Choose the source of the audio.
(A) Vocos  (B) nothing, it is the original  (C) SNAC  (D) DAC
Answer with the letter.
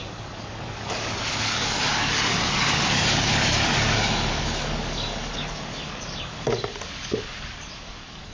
D